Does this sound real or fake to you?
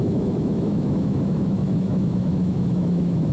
fake